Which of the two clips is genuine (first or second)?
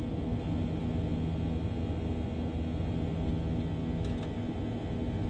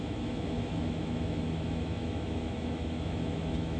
first